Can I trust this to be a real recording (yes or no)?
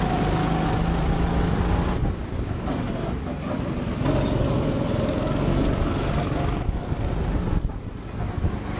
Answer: yes